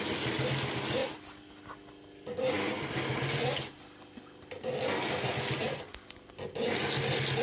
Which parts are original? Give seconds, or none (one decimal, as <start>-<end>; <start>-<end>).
0.0-7.4